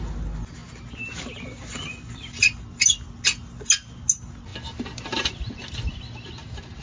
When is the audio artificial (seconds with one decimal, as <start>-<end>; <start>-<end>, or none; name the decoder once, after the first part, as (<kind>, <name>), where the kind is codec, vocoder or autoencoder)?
none